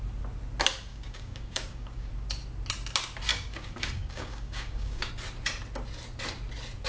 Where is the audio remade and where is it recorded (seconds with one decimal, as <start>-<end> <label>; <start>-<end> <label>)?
0.0-0.9 recorded; 0.9-2.1 remade; 2.1-3.3 recorded; 3.3-5.1 remade; 5.1-6.9 recorded